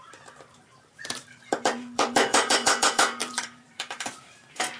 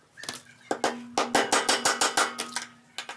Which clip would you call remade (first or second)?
first